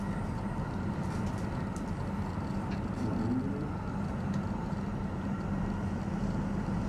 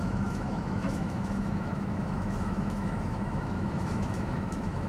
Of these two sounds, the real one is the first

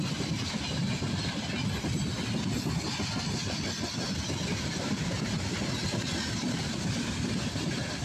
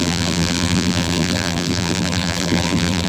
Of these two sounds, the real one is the first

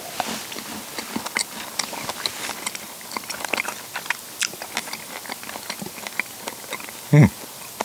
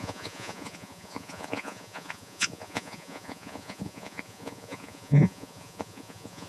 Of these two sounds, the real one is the first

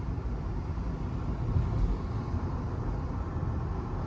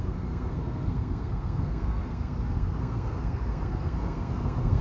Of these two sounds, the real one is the first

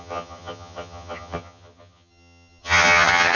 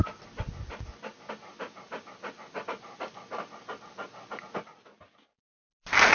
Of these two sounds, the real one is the second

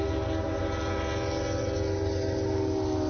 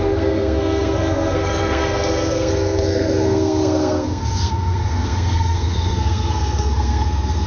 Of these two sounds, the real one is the first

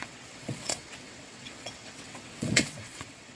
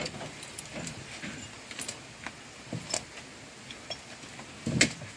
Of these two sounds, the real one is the second